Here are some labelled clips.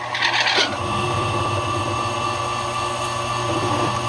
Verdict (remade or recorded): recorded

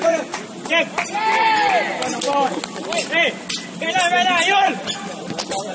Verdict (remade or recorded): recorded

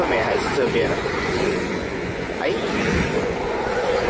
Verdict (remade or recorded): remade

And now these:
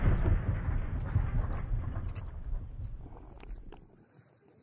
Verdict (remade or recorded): recorded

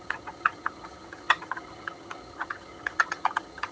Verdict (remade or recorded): remade